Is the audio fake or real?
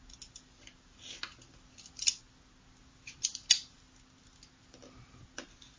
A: real